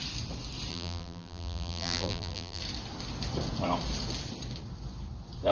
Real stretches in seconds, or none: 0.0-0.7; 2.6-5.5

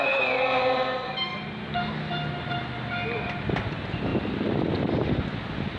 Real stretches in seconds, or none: 0.0-4.1; 5.2-5.8

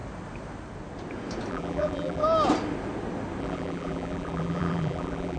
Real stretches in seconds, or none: 0.0-1.5; 2.2-3.4

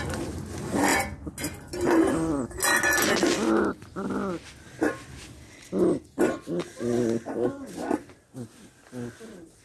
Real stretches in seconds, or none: 0.0-9.6

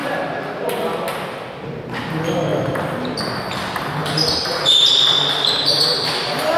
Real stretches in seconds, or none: 0.0-4.0

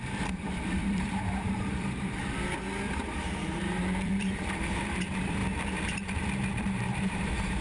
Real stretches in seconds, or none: 2.2-3.0; 5.4-6.6